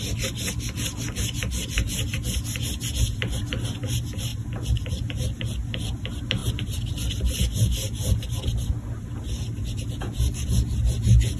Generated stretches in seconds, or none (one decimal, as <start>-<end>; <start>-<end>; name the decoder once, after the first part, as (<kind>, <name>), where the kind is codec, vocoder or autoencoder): none